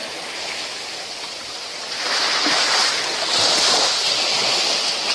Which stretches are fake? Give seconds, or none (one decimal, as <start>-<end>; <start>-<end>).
0.0-2.9